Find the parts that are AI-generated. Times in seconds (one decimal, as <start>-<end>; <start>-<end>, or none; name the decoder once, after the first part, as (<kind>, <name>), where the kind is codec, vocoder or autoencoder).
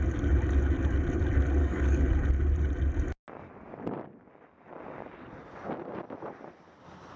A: 1.6-2.1 (codec, DAC)